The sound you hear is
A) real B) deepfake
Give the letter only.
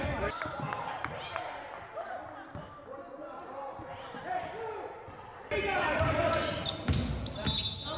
A